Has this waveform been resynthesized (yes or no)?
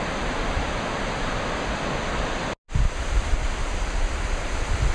no